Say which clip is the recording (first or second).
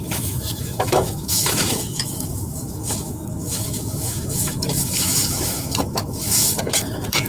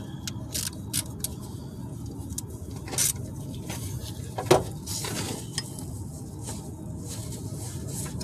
second